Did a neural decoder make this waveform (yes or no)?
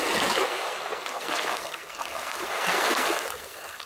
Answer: yes